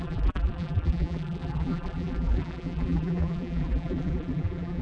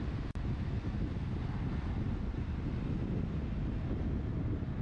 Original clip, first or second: second